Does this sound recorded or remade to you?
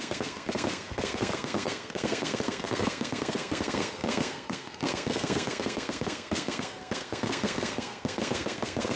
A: remade